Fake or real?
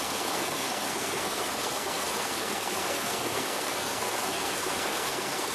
fake